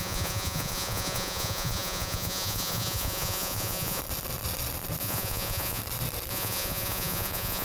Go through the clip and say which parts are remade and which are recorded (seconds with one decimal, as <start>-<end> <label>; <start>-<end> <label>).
0.0-4.0 remade; 4.0-5.0 recorded; 5.0-5.8 remade; 5.8-6.3 recorded; 6.3-7.6 remade